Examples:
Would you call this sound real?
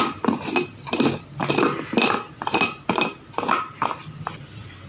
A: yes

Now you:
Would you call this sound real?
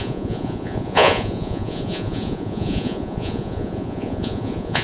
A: no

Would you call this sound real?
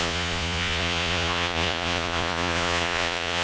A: no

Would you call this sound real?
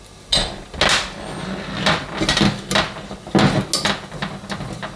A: yes